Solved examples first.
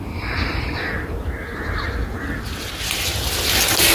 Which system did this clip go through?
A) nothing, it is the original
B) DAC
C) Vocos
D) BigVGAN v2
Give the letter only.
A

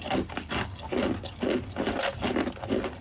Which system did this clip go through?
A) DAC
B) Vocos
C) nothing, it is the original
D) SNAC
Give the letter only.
C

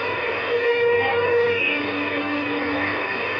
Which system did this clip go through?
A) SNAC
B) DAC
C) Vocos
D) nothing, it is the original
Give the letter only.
B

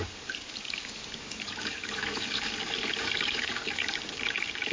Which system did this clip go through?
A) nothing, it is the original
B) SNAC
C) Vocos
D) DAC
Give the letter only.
D